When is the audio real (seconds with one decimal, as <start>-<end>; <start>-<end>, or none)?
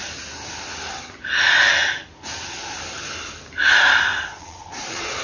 0.0-4.3